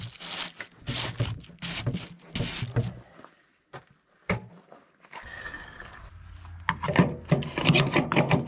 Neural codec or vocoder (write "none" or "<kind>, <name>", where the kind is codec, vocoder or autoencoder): none